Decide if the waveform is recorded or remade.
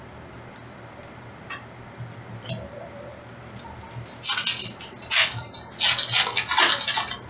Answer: recorded